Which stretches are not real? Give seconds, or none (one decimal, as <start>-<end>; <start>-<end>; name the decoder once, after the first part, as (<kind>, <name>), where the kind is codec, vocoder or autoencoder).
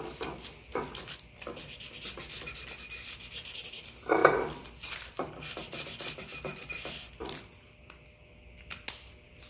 none